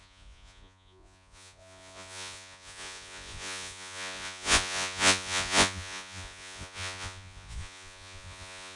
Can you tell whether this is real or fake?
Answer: fake